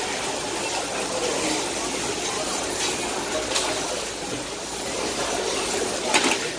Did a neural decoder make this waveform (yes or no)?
no